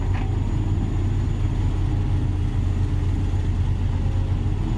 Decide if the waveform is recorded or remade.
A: recorded